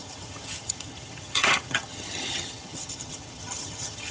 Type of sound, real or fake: fake